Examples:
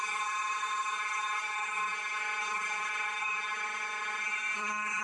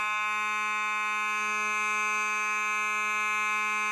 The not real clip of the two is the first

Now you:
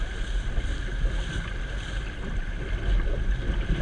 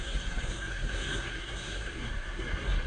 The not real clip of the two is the second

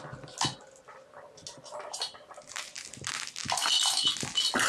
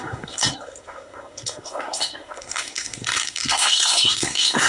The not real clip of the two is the second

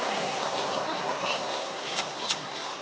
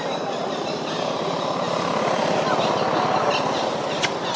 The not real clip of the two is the first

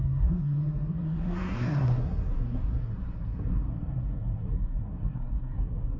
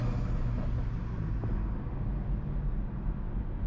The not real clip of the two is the first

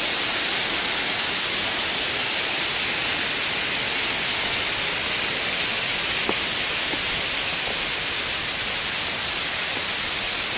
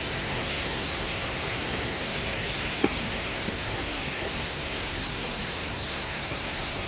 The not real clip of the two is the second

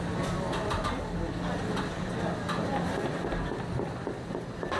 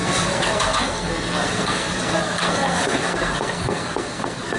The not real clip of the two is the second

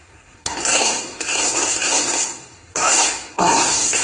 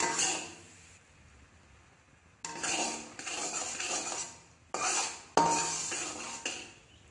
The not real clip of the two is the first